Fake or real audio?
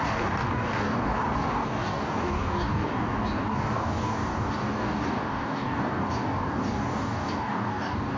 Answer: fake